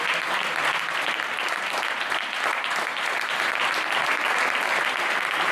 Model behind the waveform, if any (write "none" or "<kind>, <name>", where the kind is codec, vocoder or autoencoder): none